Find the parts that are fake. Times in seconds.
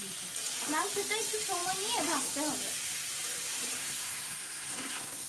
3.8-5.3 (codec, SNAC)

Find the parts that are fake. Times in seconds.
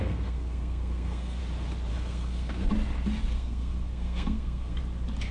0.0-1.4 (codec, SNAC); 1.9-2.7; 3.3-4.8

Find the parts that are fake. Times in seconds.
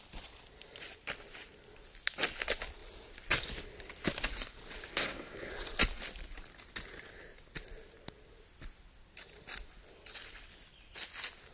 4.9-5.5 (codec, SNAC)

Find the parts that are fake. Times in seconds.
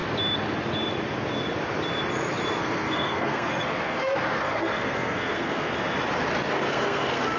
2.6-5.7 (codec, SNAC); 6.5-7.4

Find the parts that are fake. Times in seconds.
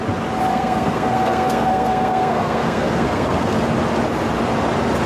0.5-3.6 (codec, SNAC)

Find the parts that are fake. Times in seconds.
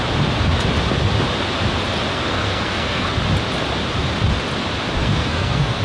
2.1-3.1 (codec, SNAC); 5.0-5.8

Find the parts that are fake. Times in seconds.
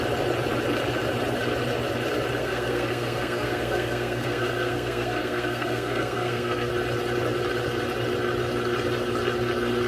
2.4-6.7 (codec, SNAC)